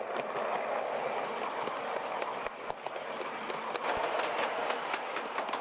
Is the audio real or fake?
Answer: real